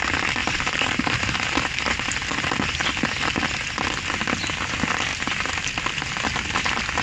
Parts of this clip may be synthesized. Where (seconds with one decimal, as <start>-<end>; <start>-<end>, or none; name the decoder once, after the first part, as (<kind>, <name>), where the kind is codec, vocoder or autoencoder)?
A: 0.4-2.1 (vocoder, BigVGAN v2); 5.1-5.8